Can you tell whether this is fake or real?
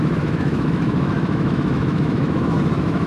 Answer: fake